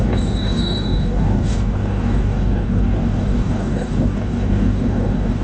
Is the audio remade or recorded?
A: remade